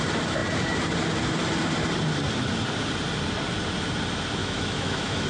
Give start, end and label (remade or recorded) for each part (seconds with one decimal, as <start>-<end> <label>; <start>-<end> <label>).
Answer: 0.0-4.4 recorded; 4.4-5.3 remade